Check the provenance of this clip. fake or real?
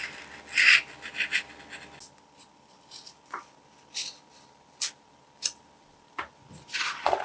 real